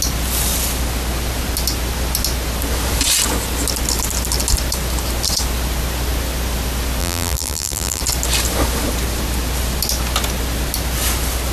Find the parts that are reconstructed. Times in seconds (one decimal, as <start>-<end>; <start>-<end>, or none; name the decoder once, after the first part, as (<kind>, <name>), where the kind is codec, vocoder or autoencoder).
7.0-8.0 (vocoder, BigVGAN v2)